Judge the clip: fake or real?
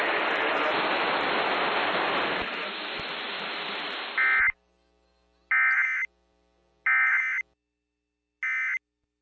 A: real